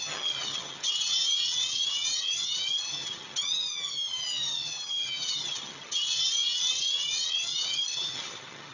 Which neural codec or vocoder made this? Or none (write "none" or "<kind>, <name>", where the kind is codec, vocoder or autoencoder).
vocoder, HiFi-GAN